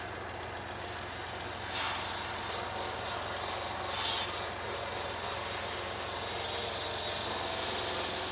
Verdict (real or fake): real